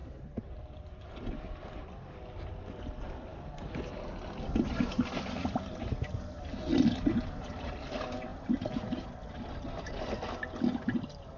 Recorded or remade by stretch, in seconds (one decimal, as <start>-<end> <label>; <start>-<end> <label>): 0.0-1.1 remade; 1.1-6.7 recorded; 6.7-7.7 remade; 7.7-8.3 recorded; 8.3-9.2 remade; 9.2-11.4 recorded